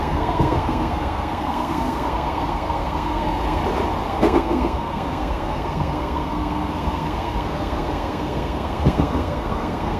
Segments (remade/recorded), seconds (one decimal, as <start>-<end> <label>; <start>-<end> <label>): 0.0-3.6 remade; 3.6-4.1 recorded; 4.1-10.0 remade